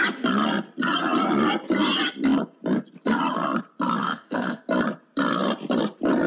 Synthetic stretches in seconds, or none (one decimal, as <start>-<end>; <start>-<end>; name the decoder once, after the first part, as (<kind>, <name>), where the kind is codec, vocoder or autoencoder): 4.0-4.6 (codec, SNAC)